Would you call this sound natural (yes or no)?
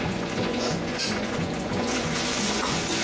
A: no